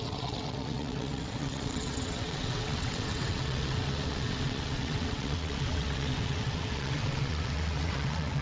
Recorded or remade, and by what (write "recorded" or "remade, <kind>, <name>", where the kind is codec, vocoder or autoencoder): remade, vocoder, WaveNeXt